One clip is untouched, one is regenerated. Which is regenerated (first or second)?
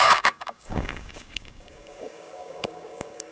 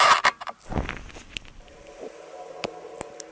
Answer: first